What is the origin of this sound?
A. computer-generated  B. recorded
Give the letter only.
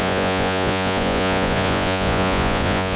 A